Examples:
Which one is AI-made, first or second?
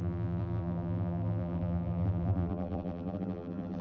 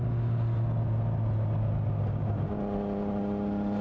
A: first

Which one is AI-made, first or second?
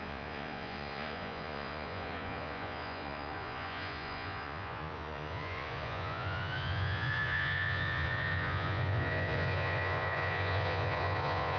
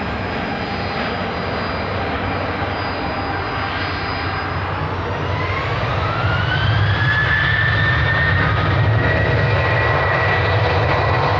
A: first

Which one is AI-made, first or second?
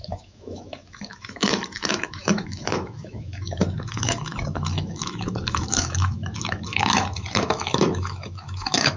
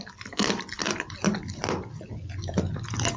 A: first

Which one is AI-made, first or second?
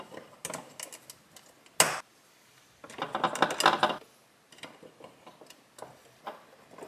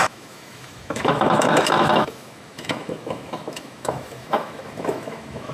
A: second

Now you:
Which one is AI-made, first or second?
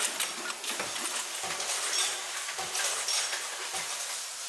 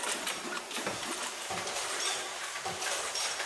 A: second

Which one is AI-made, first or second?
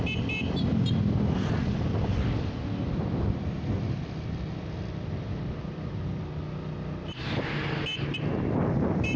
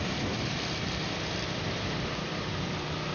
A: second